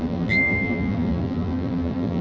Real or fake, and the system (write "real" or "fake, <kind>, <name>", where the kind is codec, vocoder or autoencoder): fake, vocoder, BigVGAN v2